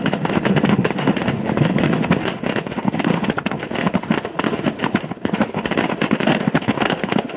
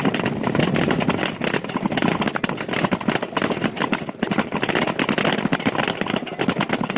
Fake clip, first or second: first